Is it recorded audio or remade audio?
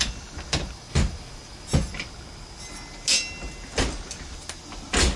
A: recorded